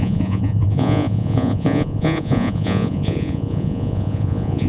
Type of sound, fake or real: fake